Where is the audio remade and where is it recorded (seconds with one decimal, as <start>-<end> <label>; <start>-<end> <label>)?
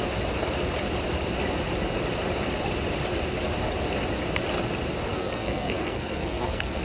0.0-5.1 recorded; 5.1-6.8 remade